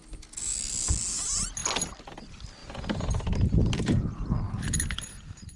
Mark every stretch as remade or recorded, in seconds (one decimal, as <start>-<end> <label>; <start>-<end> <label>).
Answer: 0.0-2.6 recorded; 2.6-4.0 remade; 4.0-5.6 recorded